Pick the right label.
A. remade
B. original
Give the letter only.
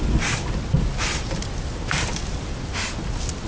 B